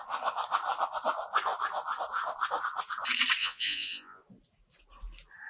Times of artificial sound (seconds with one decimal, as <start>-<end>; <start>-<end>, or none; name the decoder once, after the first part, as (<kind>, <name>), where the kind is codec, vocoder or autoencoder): 3.4-4.2 (vocoder, Vocos)